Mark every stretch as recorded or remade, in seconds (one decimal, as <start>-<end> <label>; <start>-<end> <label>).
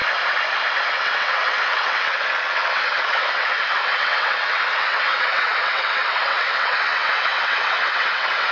0.0-0.9 recorded; 0.9-8.5 remade